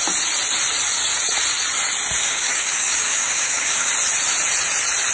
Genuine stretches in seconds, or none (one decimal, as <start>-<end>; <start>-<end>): 0.0-2.2; 3.9-5.1